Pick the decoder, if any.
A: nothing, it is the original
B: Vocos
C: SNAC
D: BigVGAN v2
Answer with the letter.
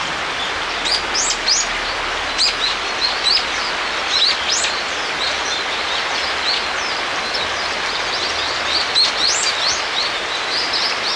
A